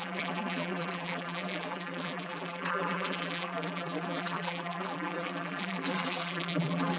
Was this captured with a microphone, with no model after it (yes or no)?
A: no